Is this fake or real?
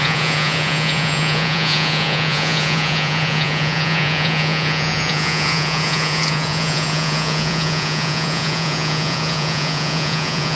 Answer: fake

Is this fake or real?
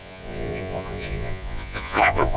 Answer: fake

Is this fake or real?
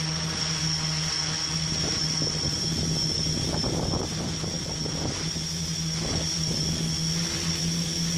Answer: real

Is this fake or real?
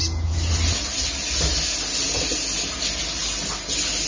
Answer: real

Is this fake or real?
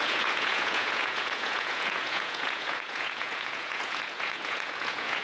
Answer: fake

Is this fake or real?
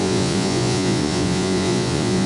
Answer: fake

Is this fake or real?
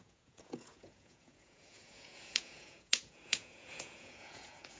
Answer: fake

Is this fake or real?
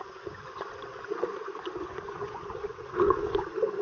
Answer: fake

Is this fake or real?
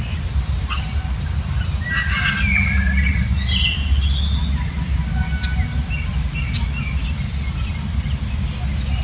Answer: real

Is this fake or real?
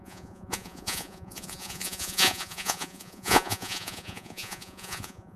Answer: fake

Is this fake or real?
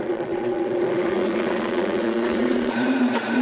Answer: fake